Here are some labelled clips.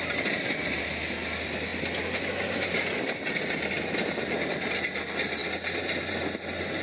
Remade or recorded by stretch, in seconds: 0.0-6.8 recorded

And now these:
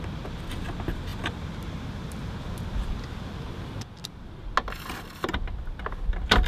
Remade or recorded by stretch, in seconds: 0.0-6.5 recorded

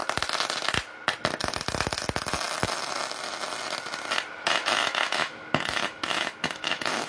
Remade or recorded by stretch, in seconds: 0.0-4.3 recorded; 4.3-7.1 remade

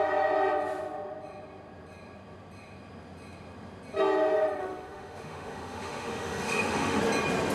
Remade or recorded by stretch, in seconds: 0.0-4.6 recorded; 4.6-7.0 remade; 7.0-7.5 recorded

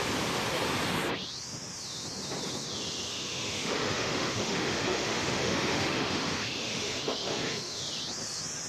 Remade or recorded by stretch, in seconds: 0.0-3.1 recorded; 3.1-7.8 remade; 7.8-8.7 recorded

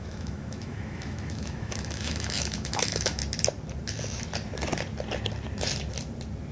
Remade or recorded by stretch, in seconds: 0.0-3.2 remade; 3.2-6.5 recorded

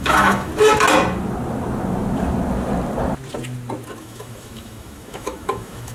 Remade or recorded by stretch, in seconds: 0.0-0.5 remade; 0.5-4.0 recorded; 4.0-5.9 remade

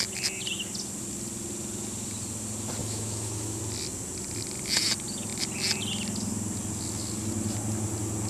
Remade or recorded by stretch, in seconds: 0.0-2.8 recorded; 2.8-3.6 remade; 3.6-8.3 recorded